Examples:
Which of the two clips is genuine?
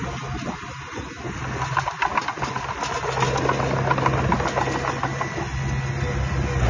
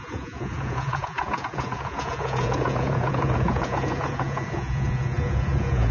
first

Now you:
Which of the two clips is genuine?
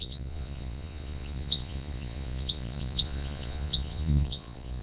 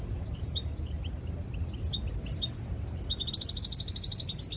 second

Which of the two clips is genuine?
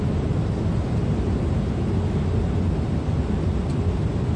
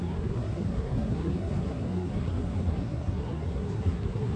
first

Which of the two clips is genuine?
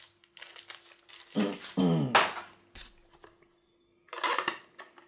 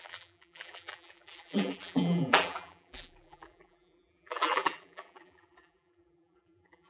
first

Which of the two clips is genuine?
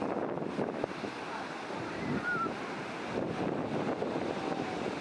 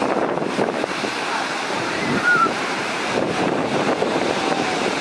first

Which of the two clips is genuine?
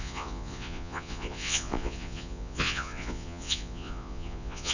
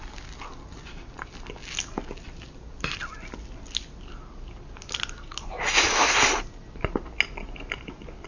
second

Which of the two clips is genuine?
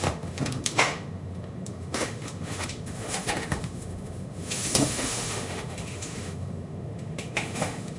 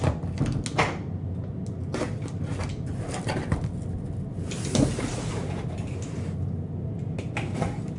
second